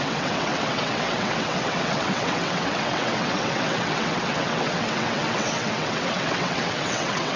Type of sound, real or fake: fake